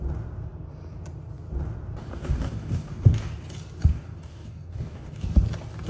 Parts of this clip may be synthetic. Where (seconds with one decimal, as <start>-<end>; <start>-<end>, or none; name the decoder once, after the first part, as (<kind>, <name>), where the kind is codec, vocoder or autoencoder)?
2.0-3.3 (codec, DAC); 3.9-5.3